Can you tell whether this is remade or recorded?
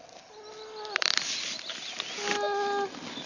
recorded